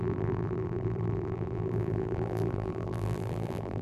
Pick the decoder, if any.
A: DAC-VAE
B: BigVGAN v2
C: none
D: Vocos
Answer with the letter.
B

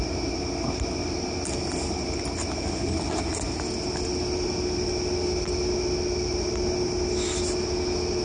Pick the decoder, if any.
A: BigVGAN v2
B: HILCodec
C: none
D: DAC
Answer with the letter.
C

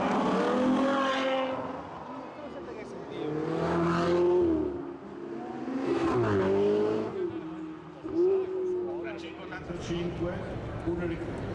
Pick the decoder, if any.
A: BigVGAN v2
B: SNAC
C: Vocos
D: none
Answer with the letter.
D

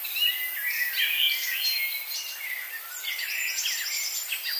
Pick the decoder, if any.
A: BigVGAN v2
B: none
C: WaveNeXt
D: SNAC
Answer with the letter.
B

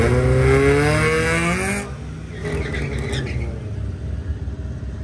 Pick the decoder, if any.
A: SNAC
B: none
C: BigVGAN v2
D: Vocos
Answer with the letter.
B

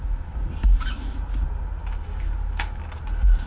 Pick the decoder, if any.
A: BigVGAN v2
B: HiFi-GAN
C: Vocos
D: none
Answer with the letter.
D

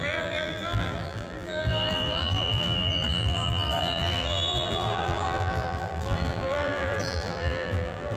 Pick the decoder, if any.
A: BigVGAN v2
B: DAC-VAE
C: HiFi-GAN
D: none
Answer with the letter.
A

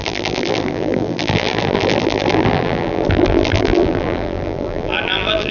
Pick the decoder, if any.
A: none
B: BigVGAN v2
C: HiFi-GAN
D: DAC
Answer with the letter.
B